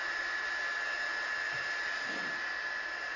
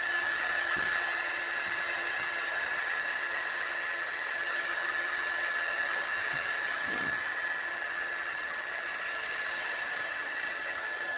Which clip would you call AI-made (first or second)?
second